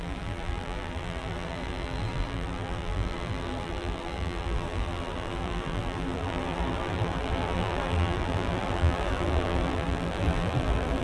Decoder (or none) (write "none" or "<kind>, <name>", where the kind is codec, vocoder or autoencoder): vocoder, BigVGAN v2